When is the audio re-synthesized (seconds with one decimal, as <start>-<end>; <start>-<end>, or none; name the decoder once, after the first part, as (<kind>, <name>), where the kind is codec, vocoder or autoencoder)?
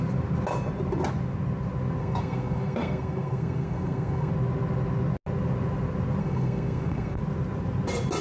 2.0-4.3 (codec, SNAC); 6.2-7.2